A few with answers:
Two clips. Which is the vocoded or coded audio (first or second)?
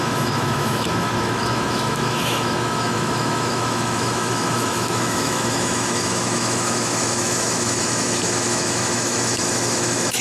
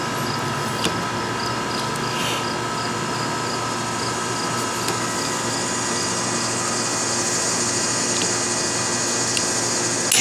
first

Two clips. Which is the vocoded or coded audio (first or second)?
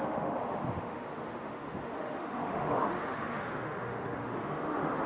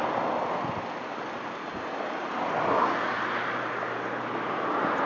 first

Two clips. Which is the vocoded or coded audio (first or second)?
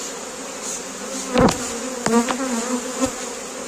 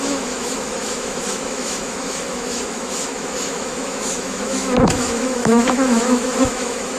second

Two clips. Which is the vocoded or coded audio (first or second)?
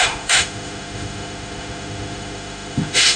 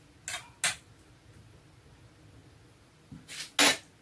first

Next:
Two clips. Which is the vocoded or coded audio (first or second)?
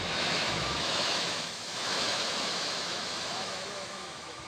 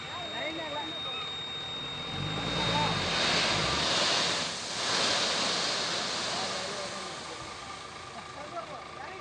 first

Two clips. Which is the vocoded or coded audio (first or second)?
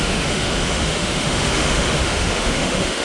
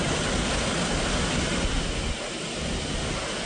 first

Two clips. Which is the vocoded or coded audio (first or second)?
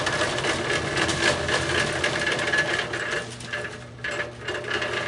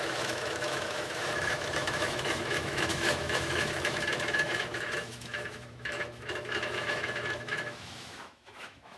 second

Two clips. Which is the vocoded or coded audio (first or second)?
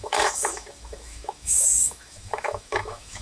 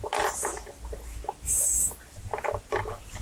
first